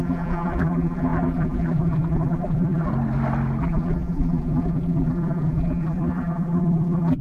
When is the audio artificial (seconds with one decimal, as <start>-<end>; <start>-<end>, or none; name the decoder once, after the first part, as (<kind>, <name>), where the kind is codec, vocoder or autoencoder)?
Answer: 0.0-2.9 (vocoder, BigVGAN v2); 3.6-7.2